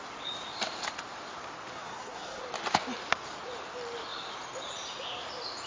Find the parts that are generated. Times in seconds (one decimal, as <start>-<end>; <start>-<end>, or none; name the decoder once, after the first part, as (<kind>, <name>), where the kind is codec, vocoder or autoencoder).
1.7-2.4 (codec, SNAC)